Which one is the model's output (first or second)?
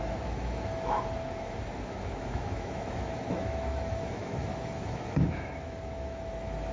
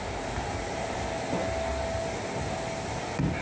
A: first